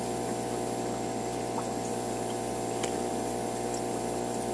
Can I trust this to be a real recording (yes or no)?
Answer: yes